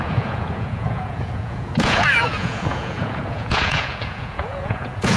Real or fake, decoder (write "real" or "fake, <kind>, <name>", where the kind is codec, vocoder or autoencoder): fake, vocoder, Vocos